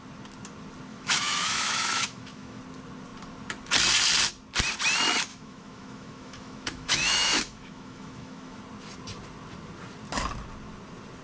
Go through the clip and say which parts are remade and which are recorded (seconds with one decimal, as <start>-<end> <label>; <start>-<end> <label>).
0.0-0.9 recorded; 0.9-2.6 remade; 2.6-5.3 recorded; 5.3-8.6 remade; 8.6-11.2 recorded